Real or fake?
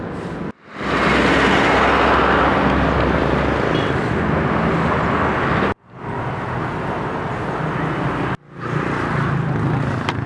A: real